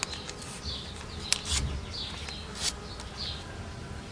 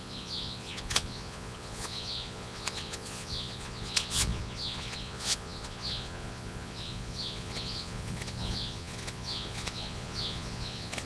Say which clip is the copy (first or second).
second